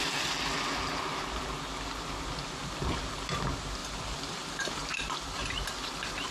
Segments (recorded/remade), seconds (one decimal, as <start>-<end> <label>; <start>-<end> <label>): 0.0-3.8 recorded; 3.8-5.4 remade; 5.4-6.3 recorded